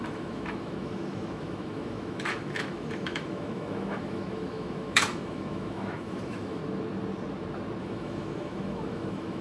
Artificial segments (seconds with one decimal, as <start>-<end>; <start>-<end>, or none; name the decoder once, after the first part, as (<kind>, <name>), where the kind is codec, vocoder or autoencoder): 0.0-6.6 (autoencoder, DAC-VAE); 7.8-9.4